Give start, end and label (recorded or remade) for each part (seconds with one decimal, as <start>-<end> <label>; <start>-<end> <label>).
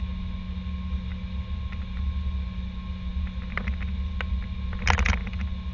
0.0-5.7 recorded